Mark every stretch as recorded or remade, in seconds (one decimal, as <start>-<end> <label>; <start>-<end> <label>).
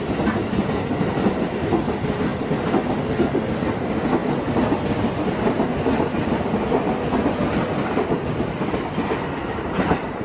0.0-10.2 recorded